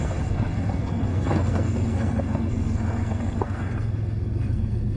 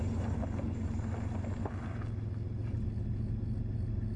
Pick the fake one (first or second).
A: first